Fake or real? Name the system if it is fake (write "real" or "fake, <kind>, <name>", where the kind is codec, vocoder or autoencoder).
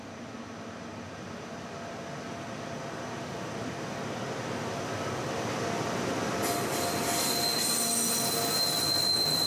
real